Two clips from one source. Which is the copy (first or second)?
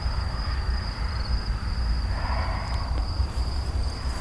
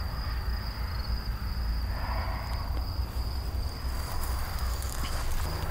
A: first